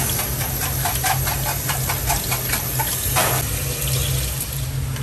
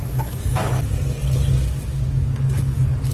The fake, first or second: second